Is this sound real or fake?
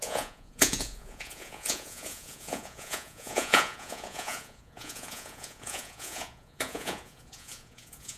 fake